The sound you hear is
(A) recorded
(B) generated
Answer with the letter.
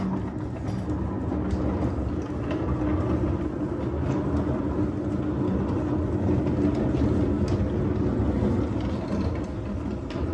A